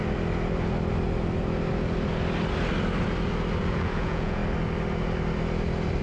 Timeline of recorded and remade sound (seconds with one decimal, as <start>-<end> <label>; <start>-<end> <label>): 0.0-3.6 recorded; 3.6-4.4 remade; 4.4-6.0 recorded